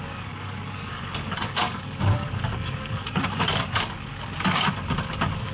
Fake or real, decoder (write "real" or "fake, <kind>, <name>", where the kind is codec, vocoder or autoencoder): fake, codec, DAC